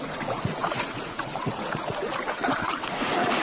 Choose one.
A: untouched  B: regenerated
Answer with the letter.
B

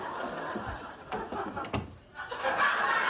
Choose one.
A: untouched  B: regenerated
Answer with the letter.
A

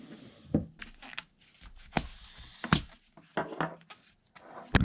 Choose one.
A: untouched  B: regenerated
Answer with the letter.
A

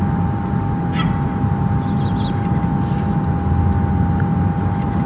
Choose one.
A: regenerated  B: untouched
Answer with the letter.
B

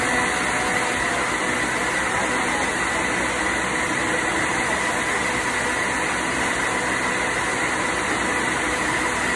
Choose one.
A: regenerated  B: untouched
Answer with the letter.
B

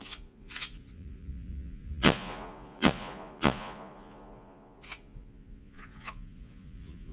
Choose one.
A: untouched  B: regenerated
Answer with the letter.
B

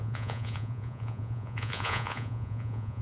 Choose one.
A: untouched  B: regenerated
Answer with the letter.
B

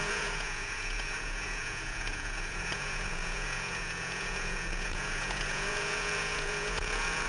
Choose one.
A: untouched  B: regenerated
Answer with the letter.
B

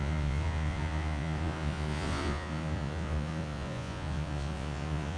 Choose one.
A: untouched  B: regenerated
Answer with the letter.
B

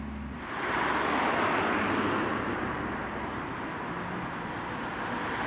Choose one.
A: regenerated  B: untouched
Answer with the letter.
B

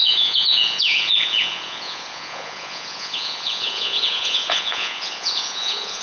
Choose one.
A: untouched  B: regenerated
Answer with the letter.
B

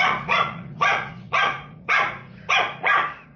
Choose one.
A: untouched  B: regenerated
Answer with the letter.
B